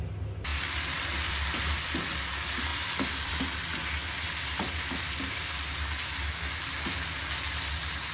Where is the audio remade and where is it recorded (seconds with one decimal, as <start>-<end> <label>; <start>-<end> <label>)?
0.0-0.5 recorded; 0.5-2.1 remade; 2.1-2.7 recorded; 2.7-3.3 remade; 3.3-8.1 recorded